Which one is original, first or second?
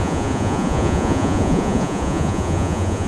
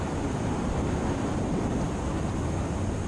second